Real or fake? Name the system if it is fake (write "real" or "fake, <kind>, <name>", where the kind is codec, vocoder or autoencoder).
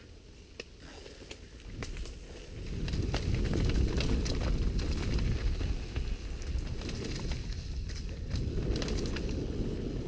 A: real